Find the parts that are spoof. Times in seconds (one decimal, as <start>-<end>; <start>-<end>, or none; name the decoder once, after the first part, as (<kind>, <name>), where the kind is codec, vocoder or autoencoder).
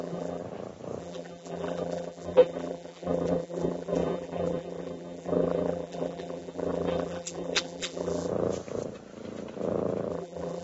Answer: 0.0-0.4 (vocoder, BigVGAN v2); 1.0-8.3; 10.1-10.6